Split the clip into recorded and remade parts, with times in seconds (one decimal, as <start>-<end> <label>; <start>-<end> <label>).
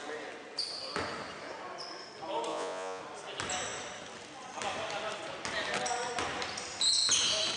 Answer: 0.0-2.5 recorded; 2.5-3.0 remade; 3.0-7.6 recorded